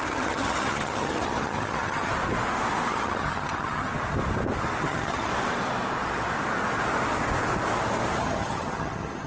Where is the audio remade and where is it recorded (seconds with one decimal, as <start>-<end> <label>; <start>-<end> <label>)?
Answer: 0.0-2.1 remade; 2.1-2.9 recorded; 2.9-3.9 remade; 3.9-4.8 recorded; 4.8-5.3 remade; 5.3-8.2 recorded; 8.2-9.3 remade